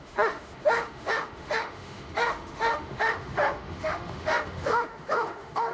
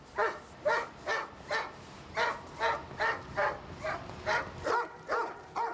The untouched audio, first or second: second